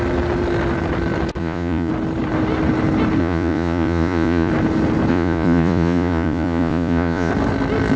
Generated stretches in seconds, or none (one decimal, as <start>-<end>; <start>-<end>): 1.4-1.9; 3.2-4.5; 5.1-7.3